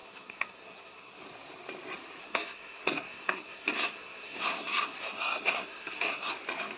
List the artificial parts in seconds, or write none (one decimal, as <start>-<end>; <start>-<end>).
0.0-1.2; 2.2-6.3